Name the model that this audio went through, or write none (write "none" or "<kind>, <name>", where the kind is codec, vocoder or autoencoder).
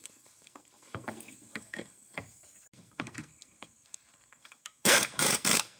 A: codec, SNAC